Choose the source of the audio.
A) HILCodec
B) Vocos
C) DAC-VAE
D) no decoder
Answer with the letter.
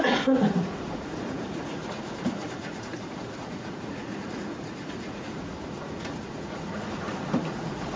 B